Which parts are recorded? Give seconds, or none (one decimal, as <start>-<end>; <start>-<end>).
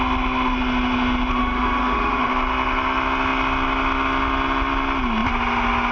0.0-1.4; 2.3-5.9